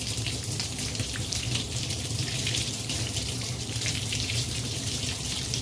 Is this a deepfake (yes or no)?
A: yes